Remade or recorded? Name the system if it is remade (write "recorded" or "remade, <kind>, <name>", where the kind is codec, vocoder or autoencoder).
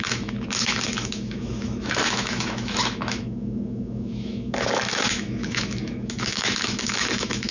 remade, autoencoder, DAC-VAE